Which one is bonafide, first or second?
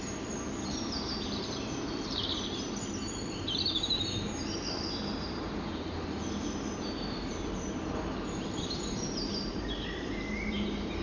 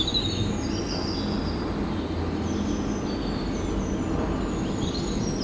second